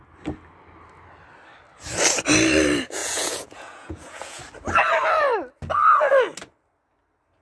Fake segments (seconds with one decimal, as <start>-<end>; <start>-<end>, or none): 3.0-4.4

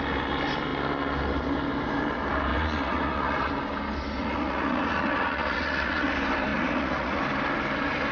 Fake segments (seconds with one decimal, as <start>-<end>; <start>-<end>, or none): 2.5-3.5; 4.2-6.1; 6.5-7.2

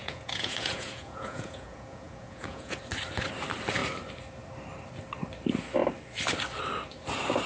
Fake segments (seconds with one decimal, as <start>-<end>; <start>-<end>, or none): 0.0-2.8

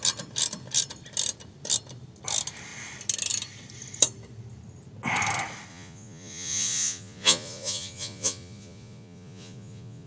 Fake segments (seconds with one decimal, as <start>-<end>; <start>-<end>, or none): 5.7-10.1

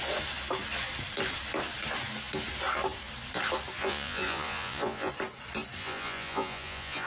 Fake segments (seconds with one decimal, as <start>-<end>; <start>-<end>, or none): 3.8-5.1; 5.8-7.1

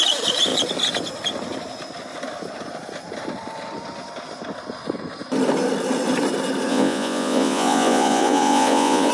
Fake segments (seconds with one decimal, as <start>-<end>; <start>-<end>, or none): 6.7-9.1